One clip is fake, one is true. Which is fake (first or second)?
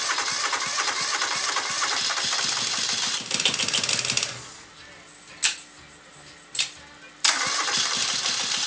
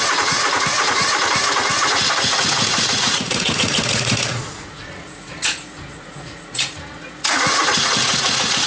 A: second